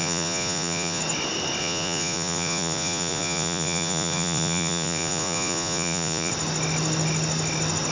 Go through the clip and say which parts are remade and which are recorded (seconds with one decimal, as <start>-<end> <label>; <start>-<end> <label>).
0.0-1.0 remade; 1.0-1.6 recorded; 1.6-6.3 remade; 6.3-7.9 recorded